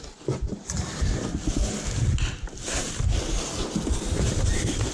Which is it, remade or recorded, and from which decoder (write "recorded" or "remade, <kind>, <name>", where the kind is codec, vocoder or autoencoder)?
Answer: recorded